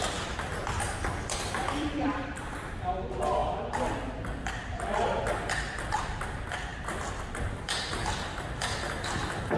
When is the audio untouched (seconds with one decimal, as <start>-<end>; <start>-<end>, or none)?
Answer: 0.0-0.5; 2.5-3.4; 4.3-9.6

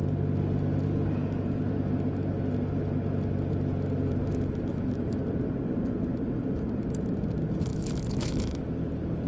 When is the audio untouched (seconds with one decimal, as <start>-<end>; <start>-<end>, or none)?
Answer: 0.0-4.7; 5.2-7.7; 8.6-9.3